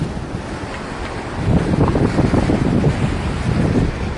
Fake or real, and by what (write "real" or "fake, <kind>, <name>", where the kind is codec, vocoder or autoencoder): real